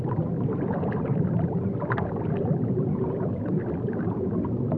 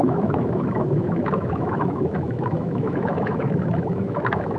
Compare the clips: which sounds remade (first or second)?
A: second